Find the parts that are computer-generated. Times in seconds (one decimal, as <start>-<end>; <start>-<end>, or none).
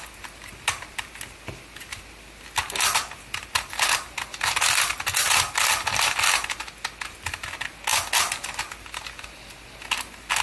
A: none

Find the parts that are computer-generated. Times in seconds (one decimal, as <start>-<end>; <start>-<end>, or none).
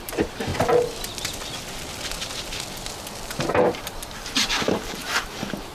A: 0.0-0.5; 3.3-5.0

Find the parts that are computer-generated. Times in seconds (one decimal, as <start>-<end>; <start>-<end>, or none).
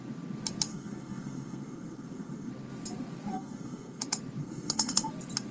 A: 0.7-2.5; 3.3-4.0; 4.4-5.1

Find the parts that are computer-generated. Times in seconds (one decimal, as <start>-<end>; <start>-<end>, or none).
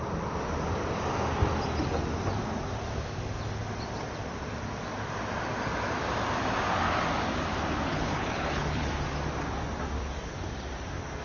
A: 7.9-8.9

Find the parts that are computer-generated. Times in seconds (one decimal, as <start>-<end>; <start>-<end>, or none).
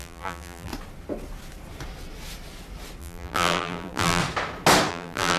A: 0.0-0.7; 3.0-4.2; 4.9-5.4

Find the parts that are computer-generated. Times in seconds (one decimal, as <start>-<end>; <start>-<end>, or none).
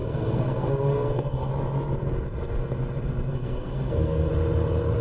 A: 0.0-1.5; 3.3-4.3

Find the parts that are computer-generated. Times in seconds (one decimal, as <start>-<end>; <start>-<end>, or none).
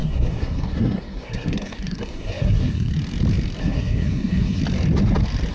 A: 0.0-2.9; 3.6-4.6